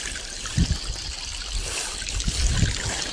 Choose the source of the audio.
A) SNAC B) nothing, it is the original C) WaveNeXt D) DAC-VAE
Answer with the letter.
B